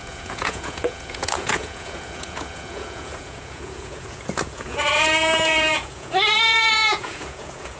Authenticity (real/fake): fake